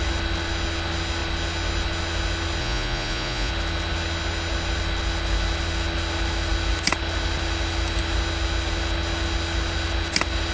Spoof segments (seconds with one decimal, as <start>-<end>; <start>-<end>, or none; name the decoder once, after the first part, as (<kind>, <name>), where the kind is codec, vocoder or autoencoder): 2.6-3.5 (vocoder, Vocos)